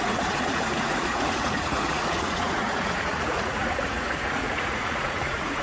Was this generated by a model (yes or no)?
yes